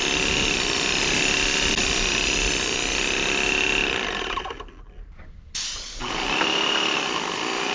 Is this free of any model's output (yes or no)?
yes